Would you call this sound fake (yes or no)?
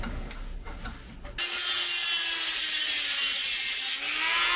no